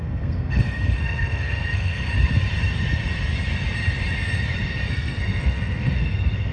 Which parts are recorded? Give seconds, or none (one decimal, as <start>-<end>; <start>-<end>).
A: 2.1-4.9